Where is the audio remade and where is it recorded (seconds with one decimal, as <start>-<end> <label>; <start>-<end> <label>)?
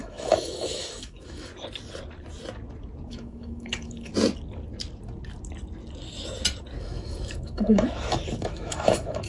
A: 0.0-1.5 remade; 1.5-3.1 recorded; 3.1-4.1 remade; 4.1-6.8 recorded; 6.8-9.3 remade